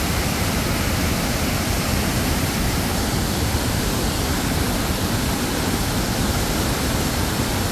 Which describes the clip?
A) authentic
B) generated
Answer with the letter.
B